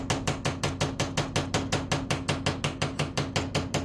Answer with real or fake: real